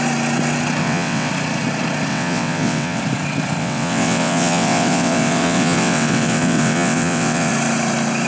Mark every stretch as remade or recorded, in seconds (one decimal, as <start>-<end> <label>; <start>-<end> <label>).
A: 0.0-0.8 recorded; 0.8-1.3 remade; 1.3-2.1 recorded; 2.1-3.0 remade; 3.0-3.6 recorded; 3.6-7.5 remade; 7.5-8.3 recorded